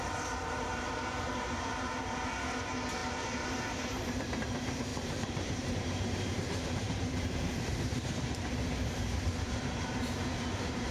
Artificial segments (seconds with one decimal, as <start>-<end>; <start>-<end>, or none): 0.0-10.9